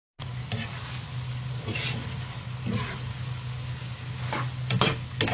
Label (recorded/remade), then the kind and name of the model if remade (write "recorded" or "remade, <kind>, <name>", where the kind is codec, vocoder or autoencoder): recorded